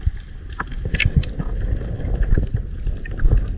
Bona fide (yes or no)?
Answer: yes